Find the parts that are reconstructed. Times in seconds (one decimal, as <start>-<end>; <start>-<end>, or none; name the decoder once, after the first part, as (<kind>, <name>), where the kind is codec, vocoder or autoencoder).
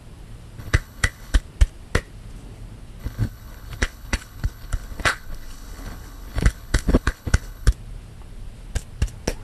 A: 0.6-1.4 (codec, HILCodec); 3.0-7.7